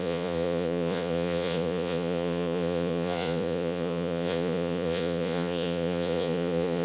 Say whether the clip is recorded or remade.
remade